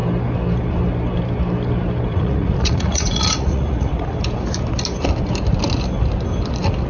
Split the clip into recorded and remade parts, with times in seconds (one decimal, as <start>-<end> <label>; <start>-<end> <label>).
0.0-2.1 recorded; 2.1-3.9 remade; 3.9-6.9 recorded